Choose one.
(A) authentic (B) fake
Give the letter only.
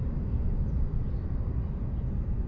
B